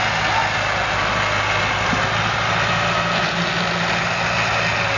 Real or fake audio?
real